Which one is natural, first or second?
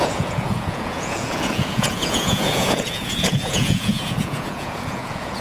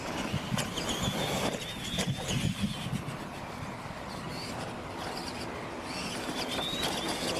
second